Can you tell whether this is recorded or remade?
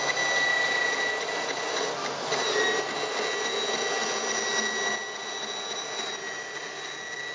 recorded